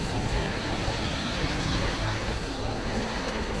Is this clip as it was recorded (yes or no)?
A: no